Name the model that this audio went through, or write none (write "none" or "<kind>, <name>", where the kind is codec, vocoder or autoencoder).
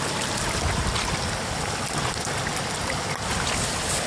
none